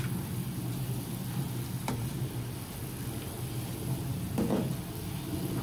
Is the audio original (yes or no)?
yes